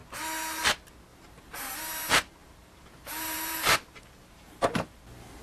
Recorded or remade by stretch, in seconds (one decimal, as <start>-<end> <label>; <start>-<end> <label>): 0.0-1.1 recorded; 1.1-1.7 remade; 1.7-2.4 recorded; 2.4-5.0 remade; 5.0-5.4 recorded